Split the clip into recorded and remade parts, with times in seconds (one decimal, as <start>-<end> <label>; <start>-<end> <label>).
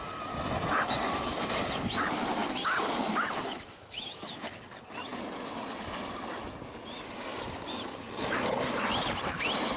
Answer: 0.0-3.5 recorded; 3.5-4.6 remade; 4.6-9.8 recorded